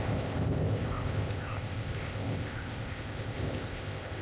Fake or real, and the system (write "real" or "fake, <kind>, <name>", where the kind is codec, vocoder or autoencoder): fake, codec, ZipCodec